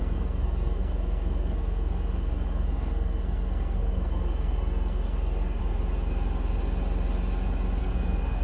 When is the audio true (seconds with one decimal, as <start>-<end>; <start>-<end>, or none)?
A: 5.6-7.8